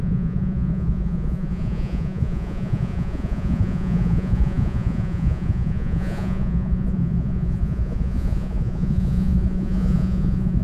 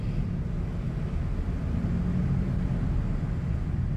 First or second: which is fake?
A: first